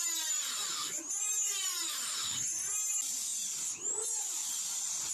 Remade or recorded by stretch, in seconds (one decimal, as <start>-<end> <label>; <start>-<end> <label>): 0.0-5.1 recorded